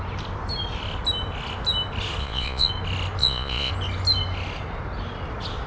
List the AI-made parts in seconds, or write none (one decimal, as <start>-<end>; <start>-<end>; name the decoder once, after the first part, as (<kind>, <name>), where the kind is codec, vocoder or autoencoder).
2.2-2.7 (vocoder, Vocos); 3.2-3.7